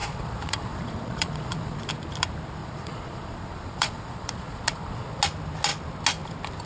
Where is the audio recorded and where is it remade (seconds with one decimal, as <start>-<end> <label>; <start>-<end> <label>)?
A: 0.0-1.9 remade; 1.9-2.6 recorded; 2.6-5.2 remade; 5.2-6.7 recorded